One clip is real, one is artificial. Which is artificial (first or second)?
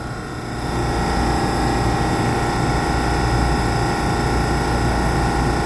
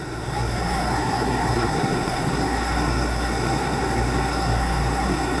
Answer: second